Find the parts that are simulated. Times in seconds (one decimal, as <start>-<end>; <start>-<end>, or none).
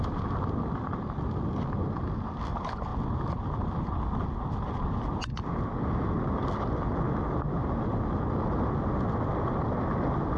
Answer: none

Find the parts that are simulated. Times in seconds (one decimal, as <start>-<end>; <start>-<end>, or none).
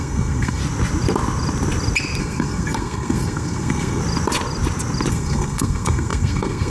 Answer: 0.0-0.6; 2.2-4.0; 5.1-6.7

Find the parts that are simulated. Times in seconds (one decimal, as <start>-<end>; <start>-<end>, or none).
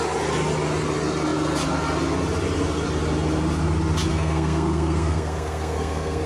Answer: 4.1-6.3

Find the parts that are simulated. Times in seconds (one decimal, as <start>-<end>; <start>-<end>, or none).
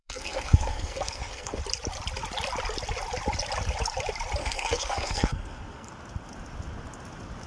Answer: 0.0-1.6; 4.4-5.9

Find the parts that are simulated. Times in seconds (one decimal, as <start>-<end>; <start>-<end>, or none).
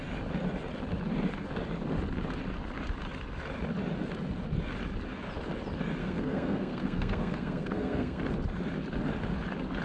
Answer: 6.0-8.2